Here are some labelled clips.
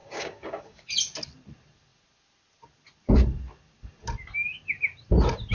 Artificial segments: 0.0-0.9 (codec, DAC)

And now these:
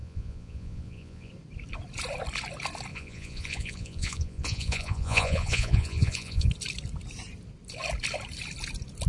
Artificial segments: 0.0-1.3 (vocoder, Vocos); 2.9-6.5

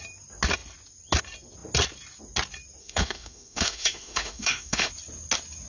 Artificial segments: 2.8-4.9 (autoencoder, DAC-VAE)

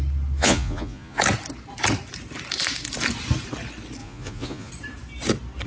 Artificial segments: 0.4-1.2 (vocoder, Vocos); 4.0-4.7

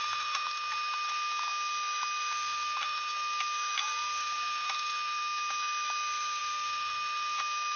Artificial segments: 0.0-7.8 (autoencoder, DAC-VAE)